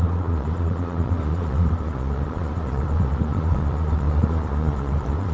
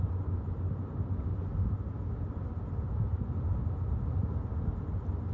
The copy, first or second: first